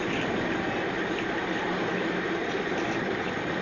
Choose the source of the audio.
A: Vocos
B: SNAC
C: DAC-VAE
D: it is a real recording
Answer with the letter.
D